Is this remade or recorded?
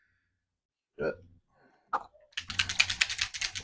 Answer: recorded